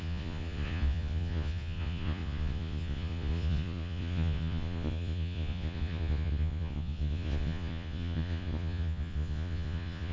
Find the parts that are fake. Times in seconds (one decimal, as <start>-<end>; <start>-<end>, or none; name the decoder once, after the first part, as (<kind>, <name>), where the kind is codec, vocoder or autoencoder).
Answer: 0.0-10.1 (vocoder, Vocos)